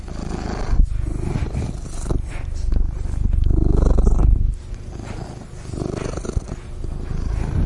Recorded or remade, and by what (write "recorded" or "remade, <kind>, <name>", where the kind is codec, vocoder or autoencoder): recorded